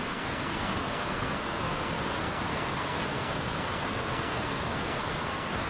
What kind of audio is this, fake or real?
fake